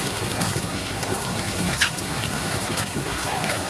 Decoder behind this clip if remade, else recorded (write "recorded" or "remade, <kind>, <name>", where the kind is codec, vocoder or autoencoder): remade, codec, SNAC